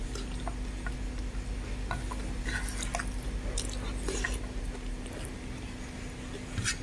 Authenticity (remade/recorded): recorded